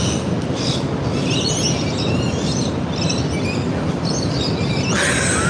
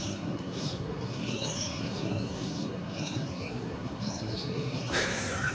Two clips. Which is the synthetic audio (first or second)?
second